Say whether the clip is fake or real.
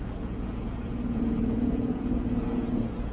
fake